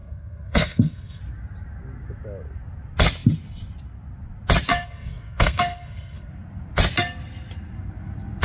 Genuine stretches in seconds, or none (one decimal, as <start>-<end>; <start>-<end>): 1.2-4.7; 6.3-8.4